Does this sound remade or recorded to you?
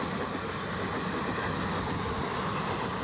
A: recorded